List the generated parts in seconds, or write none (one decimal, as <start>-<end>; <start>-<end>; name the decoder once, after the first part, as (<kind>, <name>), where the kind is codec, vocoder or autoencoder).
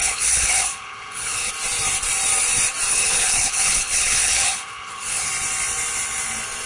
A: 0.0-1.5 (codec, HILCodec); 2.9-5.3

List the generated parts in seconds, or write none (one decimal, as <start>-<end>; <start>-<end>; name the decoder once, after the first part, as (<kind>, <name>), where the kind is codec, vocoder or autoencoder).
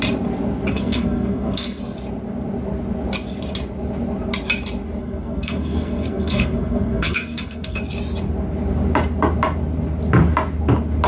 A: 0.7-1.8 (codec, SNAC); 5.0-7.8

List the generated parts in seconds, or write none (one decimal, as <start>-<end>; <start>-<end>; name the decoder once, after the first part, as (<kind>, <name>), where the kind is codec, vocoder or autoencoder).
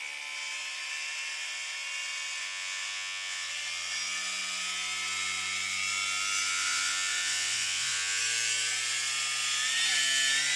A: 2.4-3.5 (vocoder, Vocos); 6.5-8.2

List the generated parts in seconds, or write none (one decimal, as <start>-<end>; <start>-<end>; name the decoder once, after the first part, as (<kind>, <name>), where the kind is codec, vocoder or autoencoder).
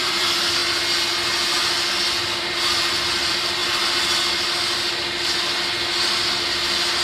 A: 0.0-0.6 (vocoder, BigVGAN v2); 2.5-3.6